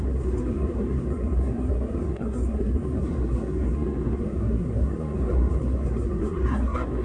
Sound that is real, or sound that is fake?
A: fake